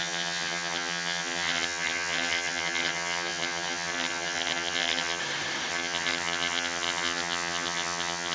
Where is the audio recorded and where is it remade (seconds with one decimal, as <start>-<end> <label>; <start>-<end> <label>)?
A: 0.0-5.2 remade; 5.2-5.7 recorded; 5.7-8.3 remade